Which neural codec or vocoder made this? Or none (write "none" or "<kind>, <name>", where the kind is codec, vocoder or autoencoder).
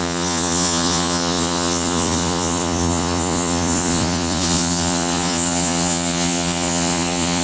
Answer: vocoder, Vocos